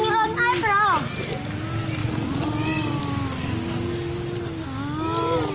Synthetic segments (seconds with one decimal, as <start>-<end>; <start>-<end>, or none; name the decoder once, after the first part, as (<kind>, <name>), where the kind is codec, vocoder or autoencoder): 2.0-2.5 (vocoder, Vocos)